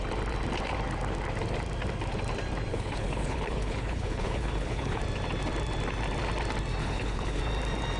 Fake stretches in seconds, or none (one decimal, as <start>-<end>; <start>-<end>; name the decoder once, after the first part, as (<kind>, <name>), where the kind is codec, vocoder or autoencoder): 2.7-5.0 (codec, HILCodec); 6.8-7.4